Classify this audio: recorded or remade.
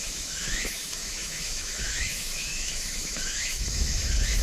remade